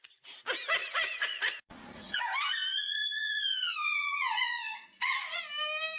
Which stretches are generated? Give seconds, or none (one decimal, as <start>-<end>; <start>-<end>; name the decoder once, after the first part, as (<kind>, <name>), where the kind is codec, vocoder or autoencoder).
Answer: 0.8-2.2 (vocoder, Vocos); 2.7-5.4